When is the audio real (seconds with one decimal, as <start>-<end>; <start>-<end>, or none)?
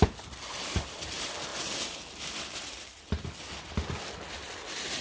0.0-5.0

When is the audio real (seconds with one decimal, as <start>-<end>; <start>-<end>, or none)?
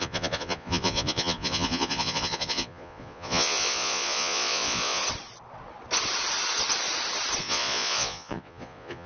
5.0-7.4